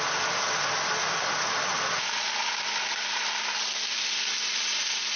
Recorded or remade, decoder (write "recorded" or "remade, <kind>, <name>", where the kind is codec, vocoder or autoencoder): recorded